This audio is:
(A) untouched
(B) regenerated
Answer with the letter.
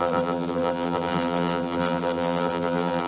B